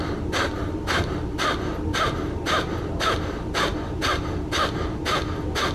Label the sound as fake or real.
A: real